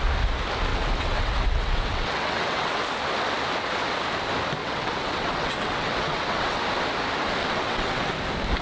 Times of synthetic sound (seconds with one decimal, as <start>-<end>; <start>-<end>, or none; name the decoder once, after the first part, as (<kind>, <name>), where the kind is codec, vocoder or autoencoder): 0.7-2.7 (vocoder, WaveNeXt); 4.6-6.6; 7.4-8.1